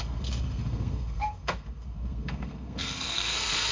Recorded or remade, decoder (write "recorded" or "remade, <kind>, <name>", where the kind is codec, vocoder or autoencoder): remade, codec, SNAC